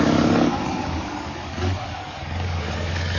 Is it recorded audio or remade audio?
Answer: remade